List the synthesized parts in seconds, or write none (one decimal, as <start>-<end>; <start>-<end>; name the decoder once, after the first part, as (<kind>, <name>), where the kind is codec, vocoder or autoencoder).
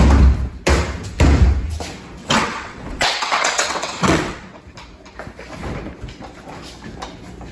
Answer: 2.2-4.6 (vocoder, WaveNeXt)